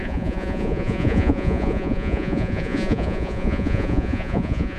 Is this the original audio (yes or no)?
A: no